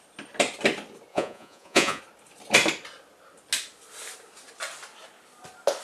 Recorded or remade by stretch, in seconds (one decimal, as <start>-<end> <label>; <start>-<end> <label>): 0.0-1.1 recorded; 1.1-2.0 remade; 2.0-5.8 recorded